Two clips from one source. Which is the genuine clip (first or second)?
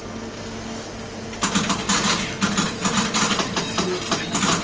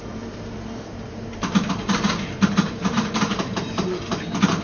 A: first